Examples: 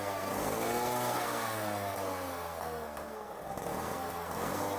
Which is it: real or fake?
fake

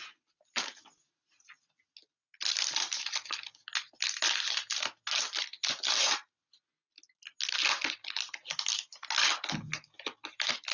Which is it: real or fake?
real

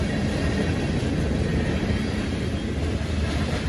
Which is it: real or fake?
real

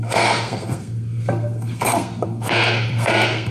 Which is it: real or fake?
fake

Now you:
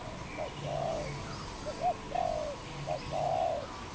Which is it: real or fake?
real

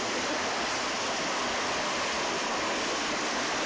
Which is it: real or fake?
real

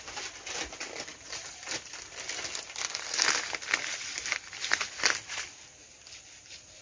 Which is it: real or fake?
real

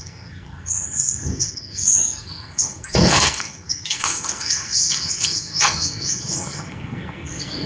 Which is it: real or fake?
fake